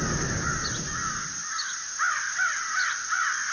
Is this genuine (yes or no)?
yes